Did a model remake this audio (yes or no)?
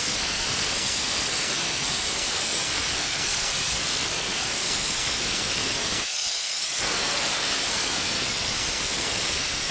yes